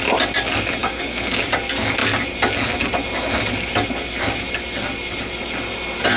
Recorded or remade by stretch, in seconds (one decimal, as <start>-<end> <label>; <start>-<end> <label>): 0.0-0.8 recorded; 0.8-1.5 remade; 1.5-6.2 recorded